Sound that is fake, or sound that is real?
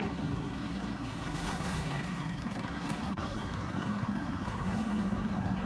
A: fake